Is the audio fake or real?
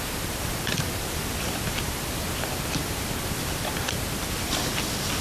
fake